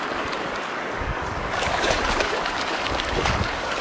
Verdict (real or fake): fake